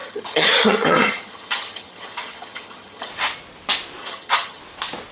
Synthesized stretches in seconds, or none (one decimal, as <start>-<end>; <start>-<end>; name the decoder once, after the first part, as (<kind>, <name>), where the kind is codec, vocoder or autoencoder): 0.0-3.1 (vocoder, HiFi-GAN); 4.0-4.6